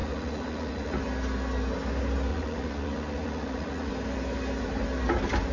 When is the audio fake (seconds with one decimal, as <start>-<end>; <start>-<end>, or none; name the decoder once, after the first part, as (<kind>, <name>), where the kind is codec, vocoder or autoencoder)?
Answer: 0.0-1.0 (vocoder, Vocos); 2.3-3.9